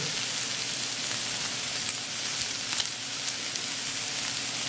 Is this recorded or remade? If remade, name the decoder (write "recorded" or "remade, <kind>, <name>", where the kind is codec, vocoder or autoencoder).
recorded